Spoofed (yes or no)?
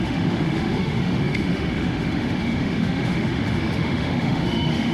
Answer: yes